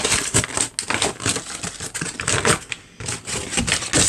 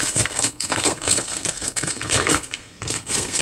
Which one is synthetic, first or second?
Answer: second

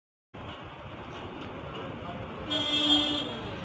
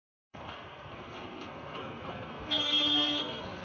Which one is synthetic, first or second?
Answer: second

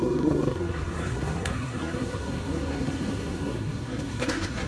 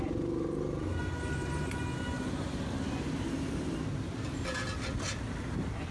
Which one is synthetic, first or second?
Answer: first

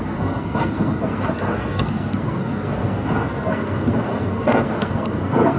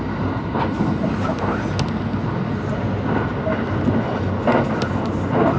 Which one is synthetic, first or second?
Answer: first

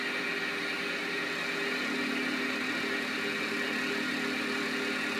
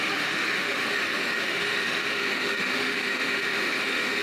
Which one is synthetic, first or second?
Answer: second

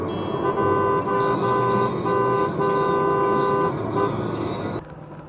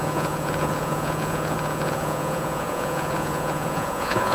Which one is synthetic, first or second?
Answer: second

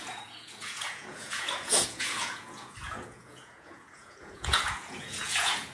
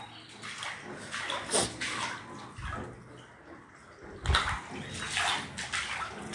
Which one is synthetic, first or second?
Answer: first